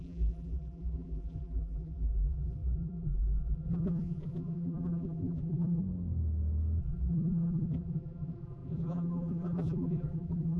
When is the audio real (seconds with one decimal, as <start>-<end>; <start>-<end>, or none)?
5.8-6.8